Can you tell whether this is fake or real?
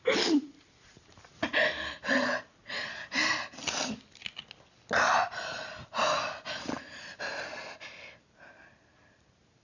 real